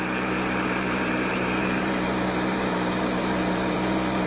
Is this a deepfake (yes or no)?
yes